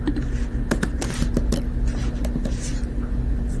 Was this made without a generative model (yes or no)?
yes